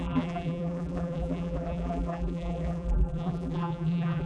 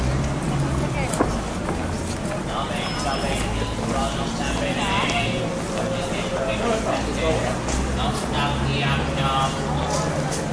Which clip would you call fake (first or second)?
first